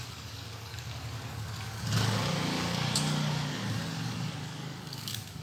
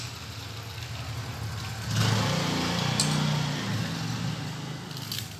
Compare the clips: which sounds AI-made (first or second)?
first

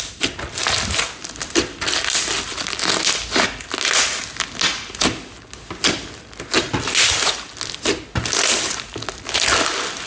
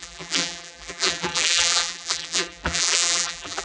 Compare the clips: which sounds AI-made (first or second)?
second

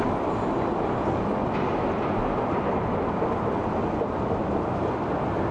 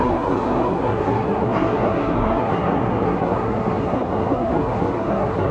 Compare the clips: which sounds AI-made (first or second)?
second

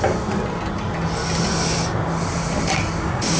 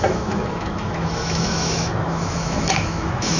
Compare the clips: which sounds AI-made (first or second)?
second